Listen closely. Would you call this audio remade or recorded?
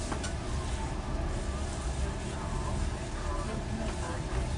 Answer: recorded